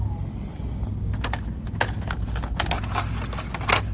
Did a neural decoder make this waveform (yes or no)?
no